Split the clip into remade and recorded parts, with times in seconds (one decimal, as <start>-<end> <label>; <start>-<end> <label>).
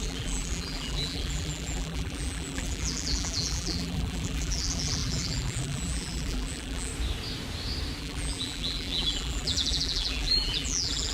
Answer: 0.0-6.9 remade; 6.9-8.0 recorded; 8.0-11.1 remade